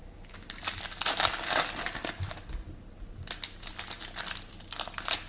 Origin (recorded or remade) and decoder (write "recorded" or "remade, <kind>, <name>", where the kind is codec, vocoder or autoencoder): recorded